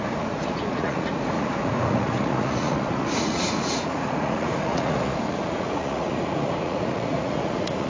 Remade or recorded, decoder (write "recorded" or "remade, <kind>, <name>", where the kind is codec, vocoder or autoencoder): remade, vocoder, Vocos